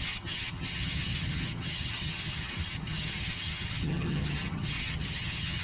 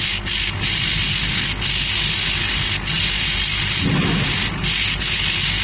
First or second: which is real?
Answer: second